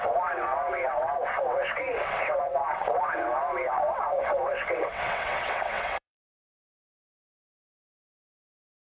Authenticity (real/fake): fake